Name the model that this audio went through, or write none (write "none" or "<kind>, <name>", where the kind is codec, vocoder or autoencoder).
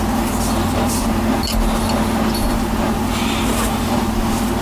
none